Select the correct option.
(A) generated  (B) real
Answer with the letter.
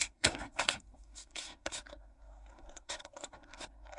A